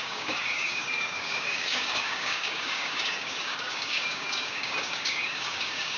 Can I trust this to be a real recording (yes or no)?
no